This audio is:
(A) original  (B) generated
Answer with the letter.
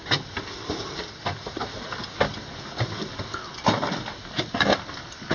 A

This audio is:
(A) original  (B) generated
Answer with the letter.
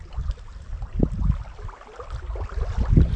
A